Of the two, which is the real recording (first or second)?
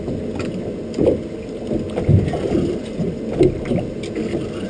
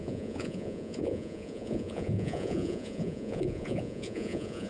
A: first